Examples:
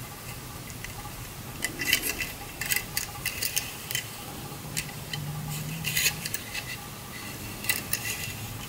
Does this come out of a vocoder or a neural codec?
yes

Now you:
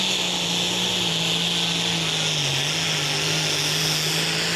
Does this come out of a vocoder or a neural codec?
no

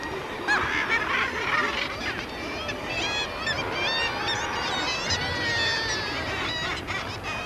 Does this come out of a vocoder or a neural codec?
no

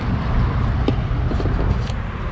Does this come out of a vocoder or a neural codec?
no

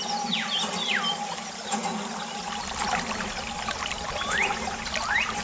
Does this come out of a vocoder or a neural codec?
no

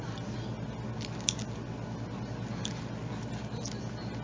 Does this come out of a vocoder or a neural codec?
no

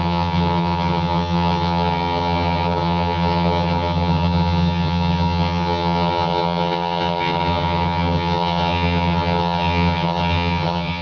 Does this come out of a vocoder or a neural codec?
yes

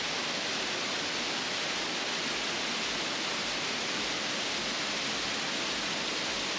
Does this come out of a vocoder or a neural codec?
no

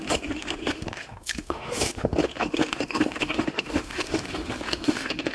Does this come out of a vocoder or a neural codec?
yes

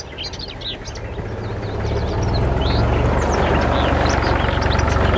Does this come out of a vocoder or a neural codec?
no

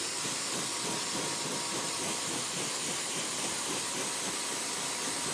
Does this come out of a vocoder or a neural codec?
no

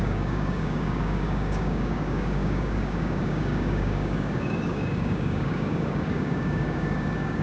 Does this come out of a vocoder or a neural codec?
yes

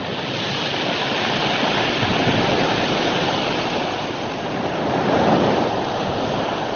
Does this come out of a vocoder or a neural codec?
yes